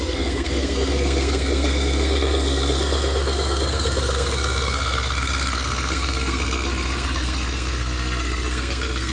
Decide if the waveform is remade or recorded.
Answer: remade